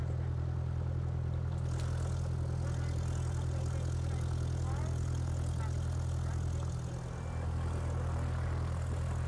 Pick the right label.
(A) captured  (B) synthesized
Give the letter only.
A